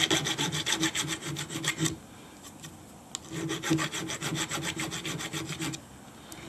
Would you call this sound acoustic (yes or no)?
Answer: yes